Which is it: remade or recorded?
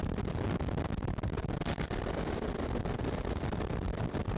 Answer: recorded